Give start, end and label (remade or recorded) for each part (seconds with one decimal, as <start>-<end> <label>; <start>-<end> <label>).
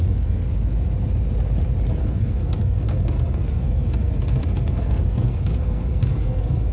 0.0-0.4 remade; 0.4-2.0 recorded; 2.0-6.7 remade